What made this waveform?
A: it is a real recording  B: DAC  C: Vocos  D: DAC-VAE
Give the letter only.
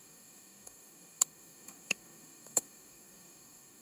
B